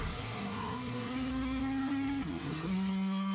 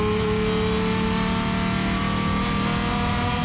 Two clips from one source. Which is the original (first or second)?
second